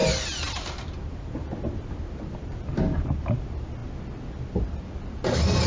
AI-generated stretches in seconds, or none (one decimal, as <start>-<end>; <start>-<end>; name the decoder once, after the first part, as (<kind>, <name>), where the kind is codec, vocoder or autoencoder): none